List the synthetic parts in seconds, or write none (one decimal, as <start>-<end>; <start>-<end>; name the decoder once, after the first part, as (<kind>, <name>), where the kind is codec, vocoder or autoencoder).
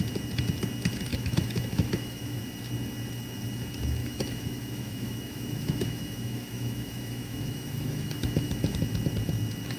1.1-2.4 (autoencoder, DAC-VAE); 4.0-8.8